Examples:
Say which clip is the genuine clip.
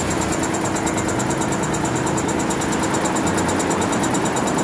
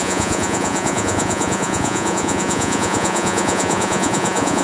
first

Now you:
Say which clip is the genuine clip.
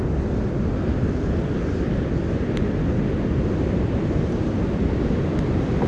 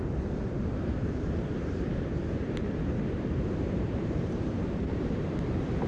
first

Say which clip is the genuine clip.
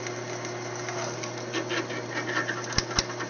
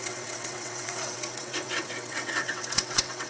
first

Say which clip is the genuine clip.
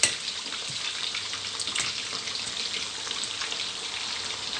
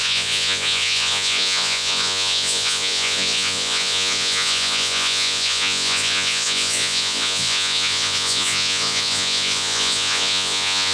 first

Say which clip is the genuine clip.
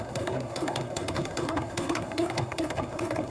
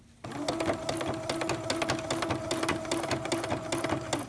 second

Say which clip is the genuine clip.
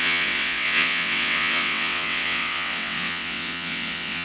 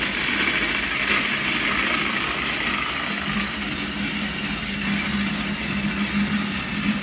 second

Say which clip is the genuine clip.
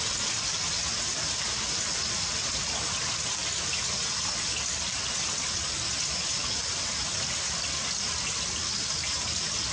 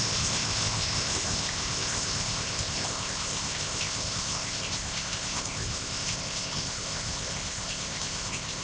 first